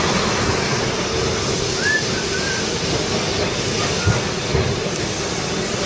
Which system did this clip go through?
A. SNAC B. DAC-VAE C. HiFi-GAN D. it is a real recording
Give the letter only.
D